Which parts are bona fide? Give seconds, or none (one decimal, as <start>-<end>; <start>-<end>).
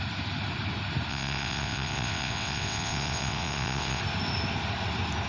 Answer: 0.0-1.1; 4.0-5.3